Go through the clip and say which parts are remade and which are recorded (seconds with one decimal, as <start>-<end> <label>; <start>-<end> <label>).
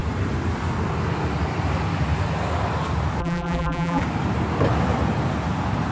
0.0-3.2 recorded; 3.2-4.0 remade; 4.0-5.9 recorded